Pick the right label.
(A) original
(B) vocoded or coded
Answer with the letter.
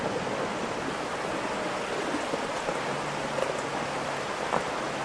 A